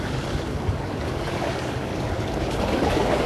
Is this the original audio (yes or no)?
no